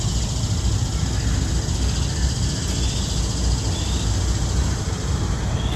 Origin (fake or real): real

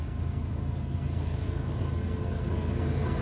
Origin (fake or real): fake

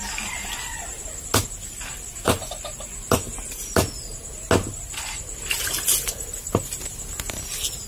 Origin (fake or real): real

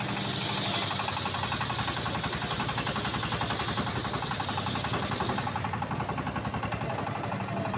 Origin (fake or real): real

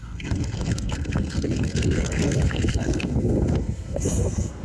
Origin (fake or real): fake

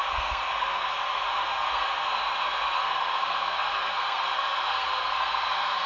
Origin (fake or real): fake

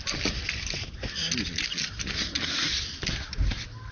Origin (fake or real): real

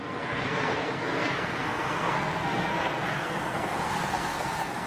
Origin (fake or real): fake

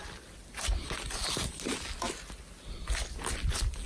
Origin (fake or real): real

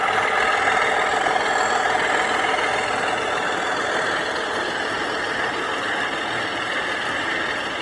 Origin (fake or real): real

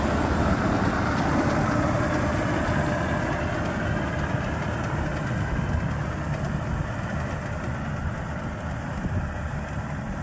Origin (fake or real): real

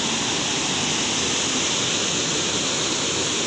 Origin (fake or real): real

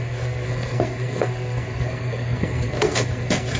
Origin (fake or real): fake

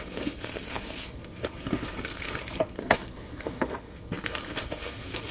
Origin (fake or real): fake